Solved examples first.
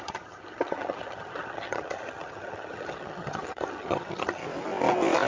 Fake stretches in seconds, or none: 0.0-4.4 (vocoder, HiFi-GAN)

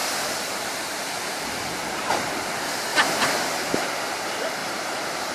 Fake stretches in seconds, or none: 0.0-1.2 (vocoder, BigVGAN v2); 2.9-3.9; 4.6-5.3

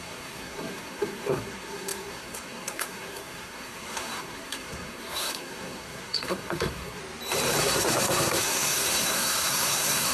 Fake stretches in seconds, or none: 0.0-7.0 (codec, SNAC); 7.6-10.1

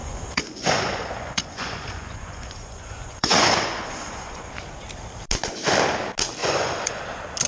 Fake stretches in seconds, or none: 0.0-4.5 (vocoder, Vocos); 6.4-7.0

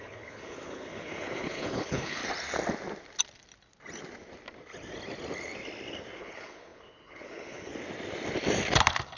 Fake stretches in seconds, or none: 0.0-2.2 (codec, HILCodec); 6.2-7.7